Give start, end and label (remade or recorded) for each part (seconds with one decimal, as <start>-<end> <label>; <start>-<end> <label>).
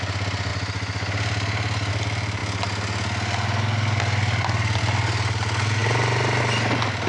0.0-7.1 recorded